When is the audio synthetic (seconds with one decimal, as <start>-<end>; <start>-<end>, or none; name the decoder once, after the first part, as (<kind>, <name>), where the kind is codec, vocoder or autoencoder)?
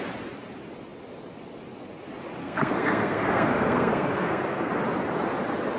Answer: 2.4-4.7 (codec, SNAC)